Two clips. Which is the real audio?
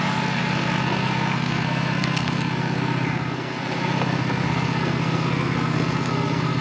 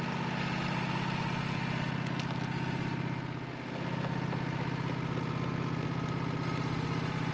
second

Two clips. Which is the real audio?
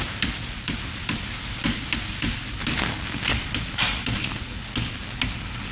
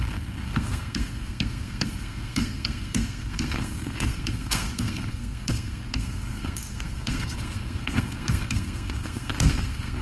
first